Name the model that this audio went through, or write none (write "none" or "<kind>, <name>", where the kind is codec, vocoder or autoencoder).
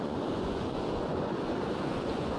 vocoder, Vocos